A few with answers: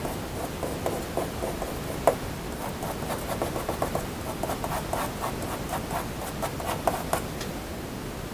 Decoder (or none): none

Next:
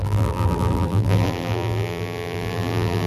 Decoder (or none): vocoder, BigVGAN v2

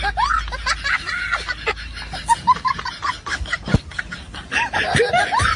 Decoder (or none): none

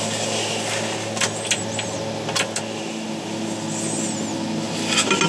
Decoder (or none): none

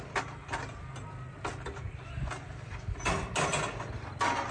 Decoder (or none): none